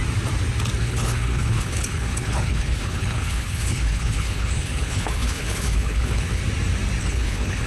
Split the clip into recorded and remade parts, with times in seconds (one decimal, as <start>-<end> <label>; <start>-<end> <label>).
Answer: 0.0-0.8 recorded; 0.8-6.4 remade; 6.4-7.0 recorded; 7.0-7.7 remade